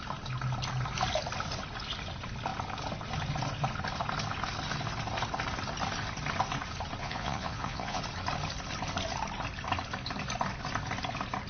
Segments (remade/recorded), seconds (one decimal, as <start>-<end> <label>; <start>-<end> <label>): 0.0-7.0 recorded; 7.0-8.0 remade; 8.0-11.5 recorded